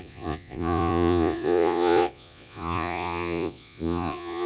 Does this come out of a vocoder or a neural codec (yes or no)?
yes